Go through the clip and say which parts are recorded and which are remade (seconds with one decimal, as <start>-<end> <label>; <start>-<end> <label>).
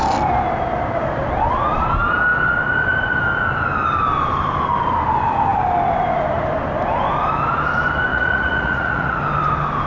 0.0-8.1 recorded; 8.1-9.2 remade; 9.2-9.9 recorded